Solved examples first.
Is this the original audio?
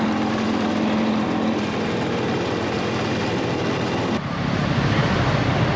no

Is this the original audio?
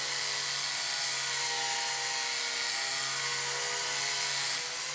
yes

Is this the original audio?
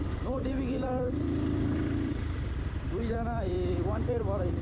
no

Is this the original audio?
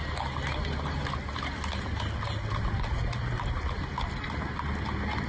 yes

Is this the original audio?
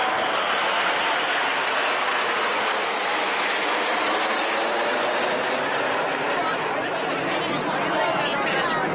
yes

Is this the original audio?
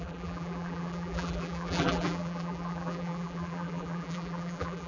no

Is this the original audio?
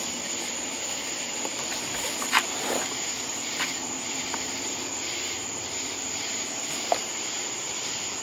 no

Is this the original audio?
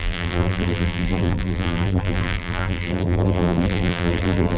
no